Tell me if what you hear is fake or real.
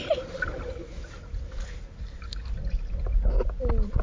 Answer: real